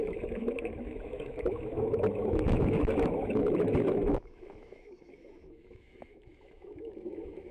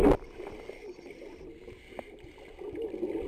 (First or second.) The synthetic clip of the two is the first